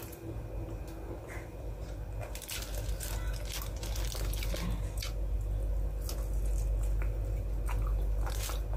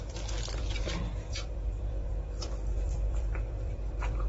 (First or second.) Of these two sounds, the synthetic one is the second